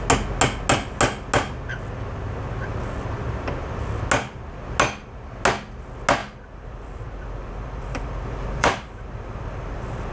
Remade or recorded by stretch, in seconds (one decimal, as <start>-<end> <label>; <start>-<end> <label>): 0.0-6.2 recorded; 6.2-10.1 remade